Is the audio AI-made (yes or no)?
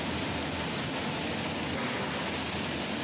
no